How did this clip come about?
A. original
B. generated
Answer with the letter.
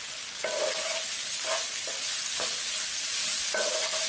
A